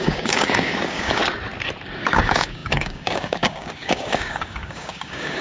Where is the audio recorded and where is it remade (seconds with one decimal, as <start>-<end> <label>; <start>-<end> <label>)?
0.0-1.2 remade; 1.2-2.0 recorded; 2.0-5.4 remade